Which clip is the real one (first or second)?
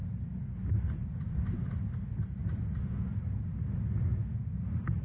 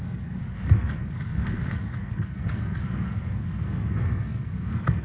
first